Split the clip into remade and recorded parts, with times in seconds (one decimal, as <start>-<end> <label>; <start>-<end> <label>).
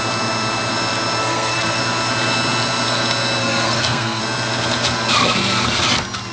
0.0-1.2 recorded; 1.2-1.8 remade; 1.8-3.4 recorded; 3.4-4.2 remade; 4.2-6.3 recorded